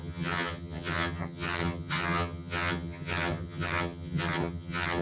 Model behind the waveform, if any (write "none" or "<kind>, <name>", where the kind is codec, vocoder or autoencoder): vocoder, HiFi-GAN